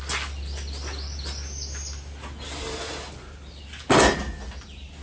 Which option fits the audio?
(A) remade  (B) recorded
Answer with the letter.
B